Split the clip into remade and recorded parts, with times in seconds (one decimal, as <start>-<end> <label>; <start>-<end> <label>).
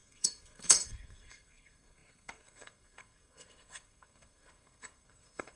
0.0-5.6 remade